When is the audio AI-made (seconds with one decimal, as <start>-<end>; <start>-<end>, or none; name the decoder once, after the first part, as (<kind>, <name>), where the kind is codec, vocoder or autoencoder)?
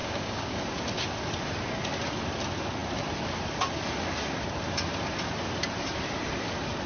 0.0-0.6 (codec, DAC)